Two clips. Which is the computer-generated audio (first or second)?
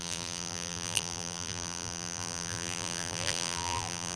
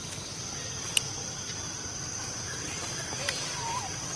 first